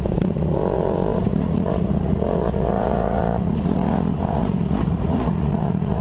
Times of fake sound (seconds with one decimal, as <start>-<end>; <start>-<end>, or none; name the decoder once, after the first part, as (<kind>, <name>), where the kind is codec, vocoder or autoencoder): 0.0-6.0 (vocoder, Vocos)